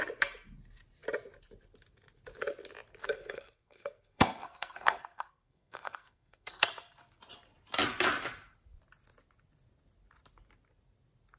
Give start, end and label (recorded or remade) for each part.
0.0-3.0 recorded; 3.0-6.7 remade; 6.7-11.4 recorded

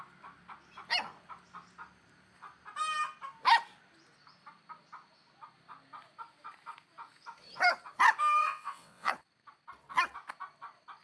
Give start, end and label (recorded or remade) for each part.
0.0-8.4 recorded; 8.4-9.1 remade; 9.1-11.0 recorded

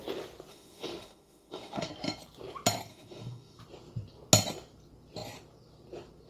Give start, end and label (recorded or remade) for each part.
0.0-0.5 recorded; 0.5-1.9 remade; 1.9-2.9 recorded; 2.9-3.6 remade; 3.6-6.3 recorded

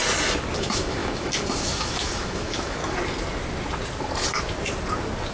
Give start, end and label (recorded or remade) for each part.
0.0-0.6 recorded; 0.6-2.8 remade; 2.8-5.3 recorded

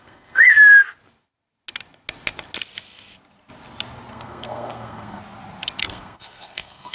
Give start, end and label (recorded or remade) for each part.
0.0-0.5 remade; 0.5-4.1 recorded; 4.1-5.2 remade; 5.2-5.8 recorded; 5.8-6.9 remade

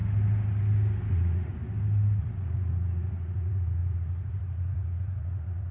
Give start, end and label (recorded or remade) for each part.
0.0-1.1 recorded; 1.1-1.5 remade; 1.5-2.2 recorded; 2.2-5.7 remade

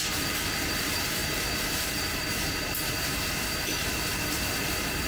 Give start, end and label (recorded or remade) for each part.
0.0-5.1 remade